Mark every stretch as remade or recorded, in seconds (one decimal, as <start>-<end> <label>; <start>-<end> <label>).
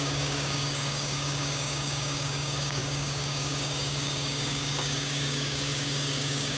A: 0.0-6.6 remade